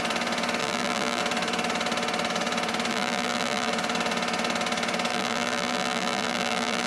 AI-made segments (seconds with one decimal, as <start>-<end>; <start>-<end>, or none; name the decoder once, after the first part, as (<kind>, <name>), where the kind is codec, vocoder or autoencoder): 0.6-1.2 (vocoder, BigVGAN v2); 2.9-3.7; 5.1-6.9